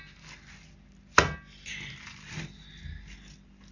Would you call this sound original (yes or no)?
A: yes